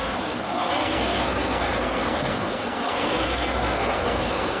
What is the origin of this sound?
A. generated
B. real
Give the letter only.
A